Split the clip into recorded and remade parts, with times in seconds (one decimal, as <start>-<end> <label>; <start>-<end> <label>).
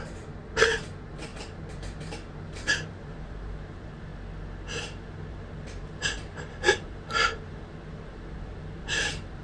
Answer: 0.0-4.1 remade; 4.1-5.3 recorded; 5.3-9.4 remade